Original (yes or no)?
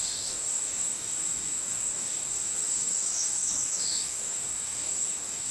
no